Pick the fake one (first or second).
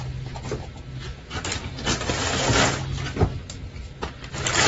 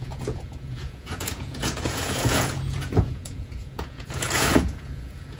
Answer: second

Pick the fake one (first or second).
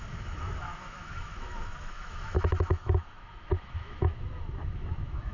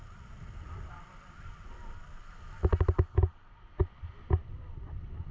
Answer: first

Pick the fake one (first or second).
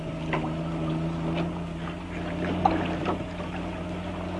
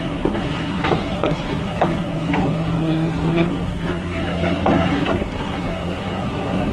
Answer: second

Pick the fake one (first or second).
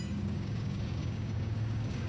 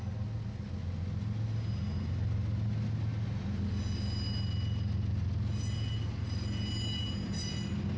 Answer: first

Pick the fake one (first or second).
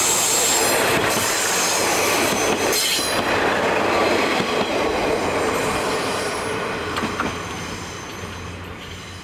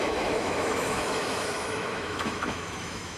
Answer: second